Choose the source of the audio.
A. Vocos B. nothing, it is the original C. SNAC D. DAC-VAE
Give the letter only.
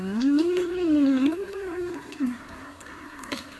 C